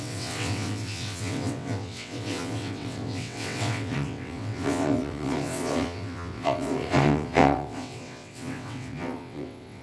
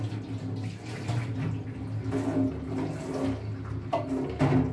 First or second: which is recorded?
second